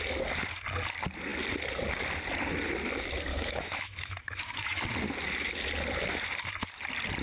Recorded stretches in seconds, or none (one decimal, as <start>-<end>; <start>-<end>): 0.0-3.3; 4.8-7.2